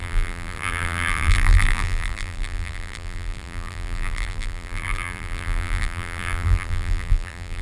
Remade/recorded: remade